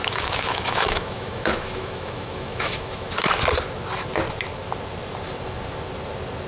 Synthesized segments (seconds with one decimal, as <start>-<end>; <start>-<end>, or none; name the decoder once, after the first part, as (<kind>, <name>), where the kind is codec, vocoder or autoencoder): 0.0-3.1 (autoencoder, DAC-VAE)